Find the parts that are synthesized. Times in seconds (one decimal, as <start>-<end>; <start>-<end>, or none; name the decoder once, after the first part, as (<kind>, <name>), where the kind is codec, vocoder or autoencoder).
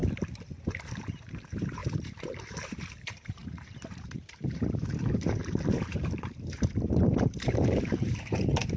1.0-8.8 (vocoder, BigVGAN v2)